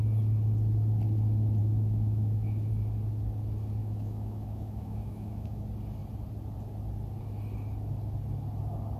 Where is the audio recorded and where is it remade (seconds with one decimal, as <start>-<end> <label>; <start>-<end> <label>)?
0.0-1.6 recorded; 1.6-2.7 remade; 2.7-3.8 recorded; 3.8-5.6 remade; 5.6-9.0 recorded